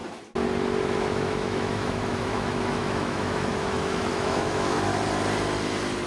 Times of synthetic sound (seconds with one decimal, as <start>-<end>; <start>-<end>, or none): 0.8-4.9

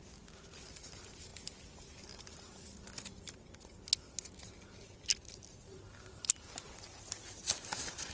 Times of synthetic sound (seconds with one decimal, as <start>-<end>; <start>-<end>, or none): none